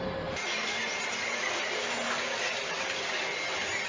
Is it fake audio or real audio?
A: real